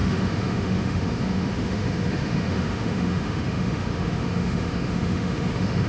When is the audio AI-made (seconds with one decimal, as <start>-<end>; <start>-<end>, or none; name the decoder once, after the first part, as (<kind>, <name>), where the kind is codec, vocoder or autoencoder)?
0.0-5.9 (autoencoder, DAC-VAE)